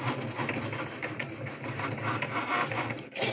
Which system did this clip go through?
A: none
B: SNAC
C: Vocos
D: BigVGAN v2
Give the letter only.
A